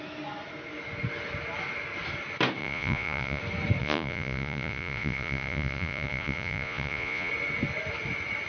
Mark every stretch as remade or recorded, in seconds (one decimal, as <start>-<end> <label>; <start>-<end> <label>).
0.0-2.6 recorded; 2.6-3.4 remade; 3.4-3.8 recorded; 3.8-7.3 remade; 7.3-8.5 recorded